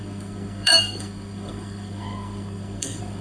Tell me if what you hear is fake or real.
fake